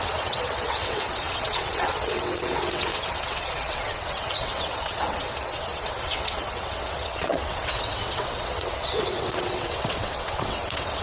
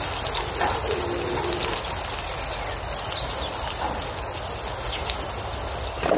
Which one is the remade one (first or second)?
first